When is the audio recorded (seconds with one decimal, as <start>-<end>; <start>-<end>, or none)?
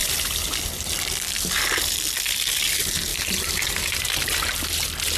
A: 0.0-3.1; 4.1-5.2